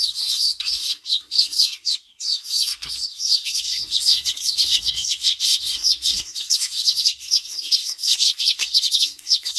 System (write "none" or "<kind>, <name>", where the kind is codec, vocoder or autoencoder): codec, SNAC